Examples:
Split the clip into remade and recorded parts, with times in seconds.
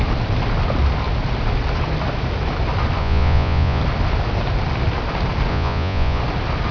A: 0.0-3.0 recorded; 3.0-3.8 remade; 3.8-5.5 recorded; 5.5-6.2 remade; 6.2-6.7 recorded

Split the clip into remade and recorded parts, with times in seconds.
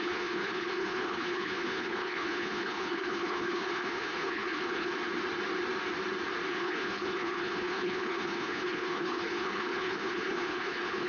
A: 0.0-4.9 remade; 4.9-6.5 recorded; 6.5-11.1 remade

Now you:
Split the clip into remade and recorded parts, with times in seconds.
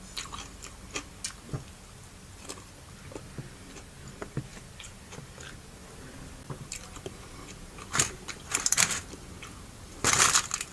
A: 0.0-5.8 recorded; 5.8-10.2 remade; 10.2-10.7 recorded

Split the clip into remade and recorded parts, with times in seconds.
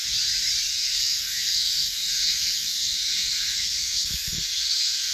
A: 0.0-0.7 recorded; 0.7-5.1 remade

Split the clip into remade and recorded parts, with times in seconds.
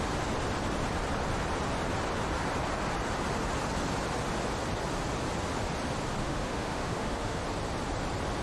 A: 0.0-6.2 recorded; 6.2-7.4 remade; 7.4-8.4 recorded